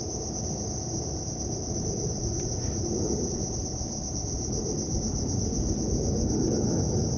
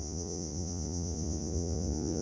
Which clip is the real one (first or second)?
first